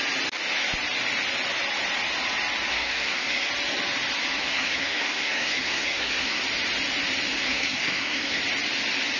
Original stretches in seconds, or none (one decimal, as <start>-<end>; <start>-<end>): 0.0-2.7; 3.5-4.4; 6.4-7.4; 8.4-9.2